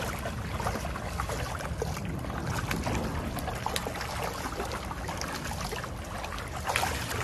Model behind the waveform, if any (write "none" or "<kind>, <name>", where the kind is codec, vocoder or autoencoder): none